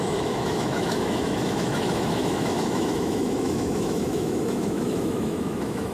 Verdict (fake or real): fake